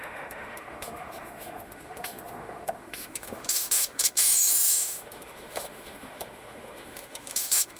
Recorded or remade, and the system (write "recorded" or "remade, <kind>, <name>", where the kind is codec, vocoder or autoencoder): remade, autoencoder, DAC-VAE